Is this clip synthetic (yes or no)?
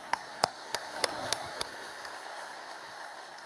yes